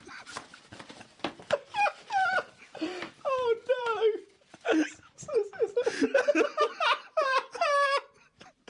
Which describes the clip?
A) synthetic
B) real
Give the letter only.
A